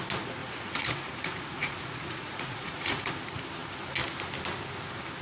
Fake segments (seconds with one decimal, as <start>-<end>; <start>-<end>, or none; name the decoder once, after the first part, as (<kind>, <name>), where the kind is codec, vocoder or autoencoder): 0.4-3.1 (vocoder, Vocos)